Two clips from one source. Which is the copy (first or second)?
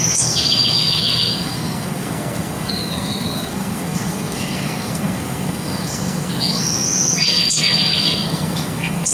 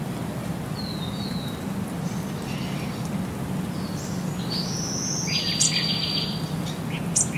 first